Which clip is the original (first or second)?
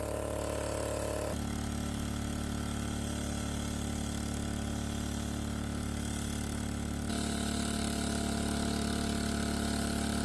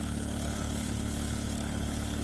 first